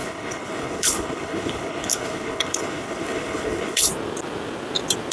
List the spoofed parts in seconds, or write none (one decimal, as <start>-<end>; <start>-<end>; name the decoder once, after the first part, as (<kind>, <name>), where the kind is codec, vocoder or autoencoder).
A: 0.0-3.9 (codec, HILCodec)